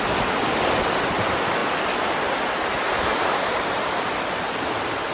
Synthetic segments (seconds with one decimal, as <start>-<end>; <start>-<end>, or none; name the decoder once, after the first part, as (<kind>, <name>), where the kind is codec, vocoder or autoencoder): none